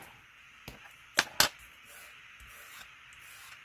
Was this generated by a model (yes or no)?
no